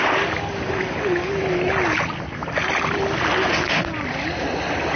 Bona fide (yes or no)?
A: yes